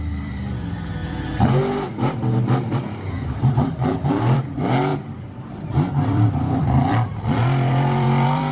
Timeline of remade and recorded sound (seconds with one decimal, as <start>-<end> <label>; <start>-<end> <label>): 0.0-1.0 remade; 1.0-1.5 recorded; 1.5-8.5 remade